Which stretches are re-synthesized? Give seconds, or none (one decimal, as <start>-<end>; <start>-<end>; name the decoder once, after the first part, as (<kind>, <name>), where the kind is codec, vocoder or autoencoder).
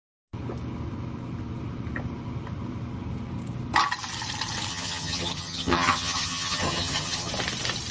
4.7-7.3 (vocoder, HiFi-GAN)